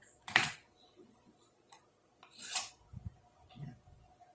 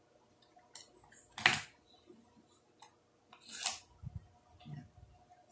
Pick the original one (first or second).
second